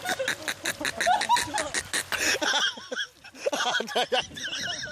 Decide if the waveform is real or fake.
real